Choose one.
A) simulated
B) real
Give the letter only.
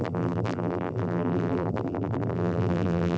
A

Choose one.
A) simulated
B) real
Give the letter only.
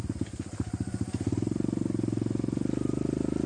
B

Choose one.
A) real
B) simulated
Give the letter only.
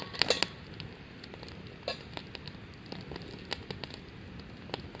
A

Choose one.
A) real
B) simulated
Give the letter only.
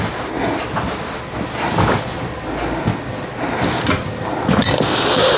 A